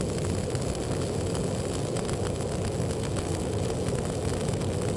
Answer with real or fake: real